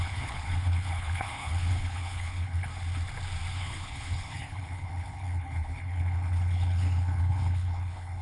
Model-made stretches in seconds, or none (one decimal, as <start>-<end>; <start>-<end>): 0.0-2.7; 3.5-8.2